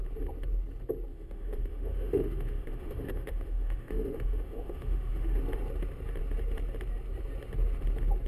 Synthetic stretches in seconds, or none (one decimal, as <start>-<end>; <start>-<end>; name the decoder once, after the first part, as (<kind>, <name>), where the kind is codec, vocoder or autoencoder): 1.1-5.4 (autoencoder, DAC-VAE)